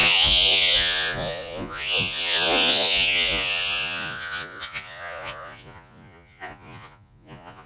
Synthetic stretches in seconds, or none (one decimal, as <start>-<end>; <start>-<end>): 0.0-7.7